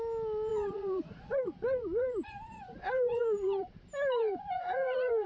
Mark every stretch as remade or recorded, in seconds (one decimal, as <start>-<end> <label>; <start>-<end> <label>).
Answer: 0.0-0.5 recorded; 0.5-3.7 remade; 3.7-4.2 recorded; 4.2-5.3 remade